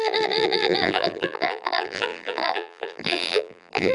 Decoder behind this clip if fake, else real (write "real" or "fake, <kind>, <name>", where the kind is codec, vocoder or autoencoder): fake, vocoder, BigVGAN v2